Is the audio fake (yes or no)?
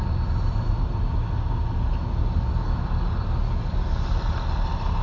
no